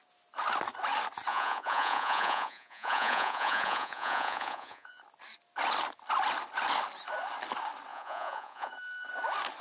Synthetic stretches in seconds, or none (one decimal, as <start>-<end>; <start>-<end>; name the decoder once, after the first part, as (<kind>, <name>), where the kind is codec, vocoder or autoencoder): 1.3-5.0 (vocoder, Vocos); 7.9-8.7